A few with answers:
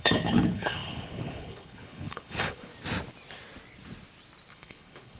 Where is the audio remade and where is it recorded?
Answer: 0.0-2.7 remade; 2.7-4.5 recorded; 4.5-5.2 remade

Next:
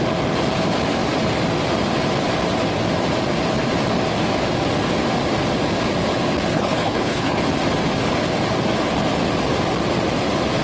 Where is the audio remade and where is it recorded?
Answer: 0.0-6.5 recorded; 6.5-7.4 remade; 7.4-10.6 recorded

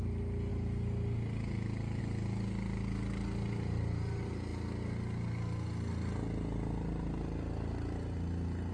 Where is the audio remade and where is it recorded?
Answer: 0.0-8.7 recorded

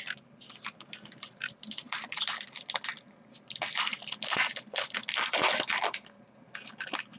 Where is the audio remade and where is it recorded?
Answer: 0.0-7.2 recorded

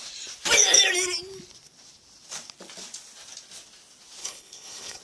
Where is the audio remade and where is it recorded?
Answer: 0.0-4.2 recorded; 4.2-5.0 remade

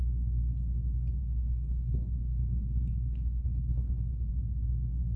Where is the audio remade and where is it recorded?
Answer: 0.0-1.2 recorded; 1.2-4.3 remade; 4.3-5.2 recorded